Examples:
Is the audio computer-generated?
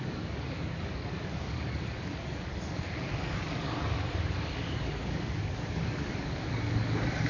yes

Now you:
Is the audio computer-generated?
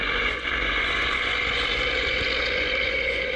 yes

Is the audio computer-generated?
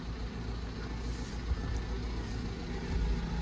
no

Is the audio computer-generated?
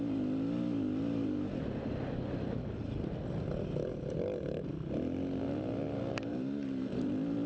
no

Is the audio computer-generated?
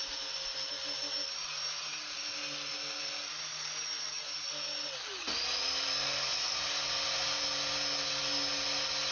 no